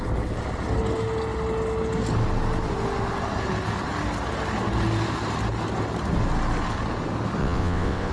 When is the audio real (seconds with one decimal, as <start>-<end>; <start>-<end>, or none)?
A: 0.0-7.4